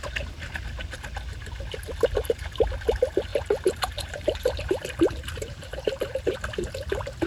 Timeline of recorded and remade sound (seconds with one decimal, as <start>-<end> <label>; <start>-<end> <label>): 0.0-3.3 recorded; 3.3-6.2 remade; 6.2-7.3 recorded